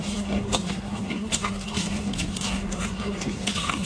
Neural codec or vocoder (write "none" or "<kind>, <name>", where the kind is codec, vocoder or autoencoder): codec, SNAC